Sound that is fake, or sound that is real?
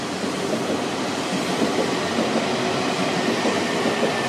real